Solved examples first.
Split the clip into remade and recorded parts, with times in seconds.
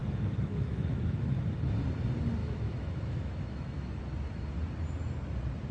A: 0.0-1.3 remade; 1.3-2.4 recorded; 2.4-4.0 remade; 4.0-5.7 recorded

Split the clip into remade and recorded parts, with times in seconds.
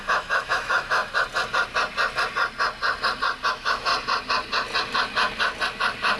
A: 0.0-1.0 remade; 1.0-3.5 recorded; 3.5-3.9 remade; 3.9-6.2 recorded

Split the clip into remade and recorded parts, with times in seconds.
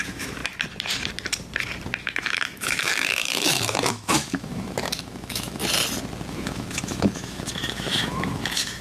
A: 0.0-0.4 remade; 0.4-2.0 recorded; 2.0-5.6 remade; 5.6-6.3 recorded; 6.3-8.8 remade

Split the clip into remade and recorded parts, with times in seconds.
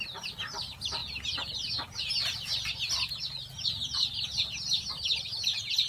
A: 0.0-5.9 recorded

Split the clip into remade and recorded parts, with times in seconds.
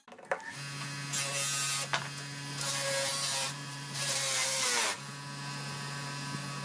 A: 0.0-3.1 recorded; 3.1-5.1 remade; 5.1-6.6 recorded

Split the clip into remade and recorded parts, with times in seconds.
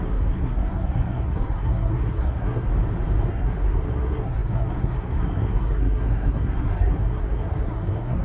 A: 0.0-2.7 remade; 2.7-3.3 recorded; 3.3-8.2 remade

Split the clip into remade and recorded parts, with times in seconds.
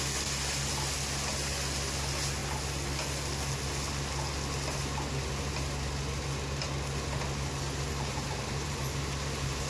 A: 0.0-8.1 recorded; 8.1-9.7 remade